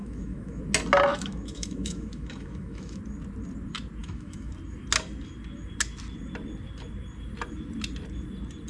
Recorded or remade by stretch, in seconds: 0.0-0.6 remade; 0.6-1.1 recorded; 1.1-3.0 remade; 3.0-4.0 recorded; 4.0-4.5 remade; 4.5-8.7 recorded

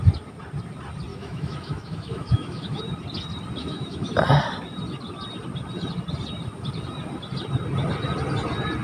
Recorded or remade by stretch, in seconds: 0.0-1.1 recorded; 1.1-2.8 remade; 2.8-3.6 recorded; 3.6-4.1 remade; 4.1-8.8 recorded